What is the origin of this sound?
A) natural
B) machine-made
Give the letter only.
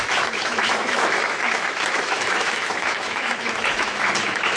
B